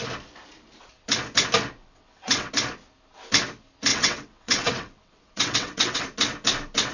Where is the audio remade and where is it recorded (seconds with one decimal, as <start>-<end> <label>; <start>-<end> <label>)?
0.0-1.8 recorded; 1.8-2.5 remade; 2.5-3.9 recorded; 3.9-6.0 remade; 6.0-6.9 recorded